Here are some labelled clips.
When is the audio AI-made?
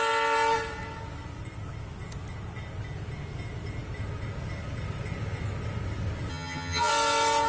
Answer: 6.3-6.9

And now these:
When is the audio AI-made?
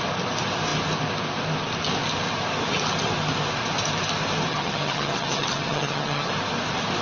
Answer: 4.5-6.3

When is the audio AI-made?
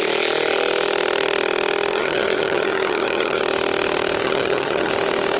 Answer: 1.9-3.4; 4.2-4.9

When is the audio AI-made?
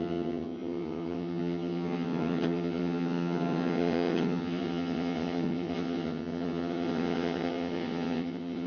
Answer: 0.0-8.7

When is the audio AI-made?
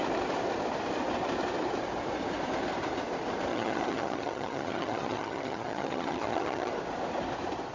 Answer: 3.5-6.7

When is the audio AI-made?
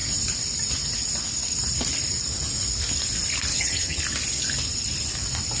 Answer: 3.5-4.0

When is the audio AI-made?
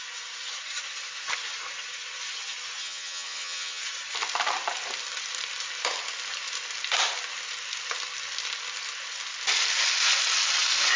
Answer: 2.8-3.8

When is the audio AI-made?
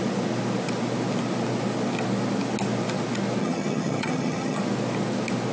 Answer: 3.4-4.6